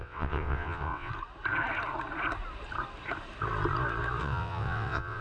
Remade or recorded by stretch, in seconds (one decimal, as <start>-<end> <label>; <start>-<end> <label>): 0.0-1.1 remade; 1.1-4.2 recorded; 4.2-5.2 remade